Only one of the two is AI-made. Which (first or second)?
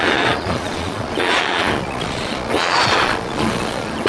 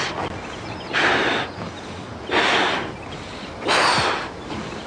first